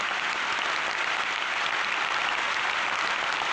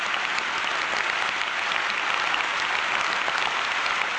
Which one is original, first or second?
second